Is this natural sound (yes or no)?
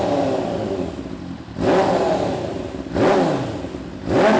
yes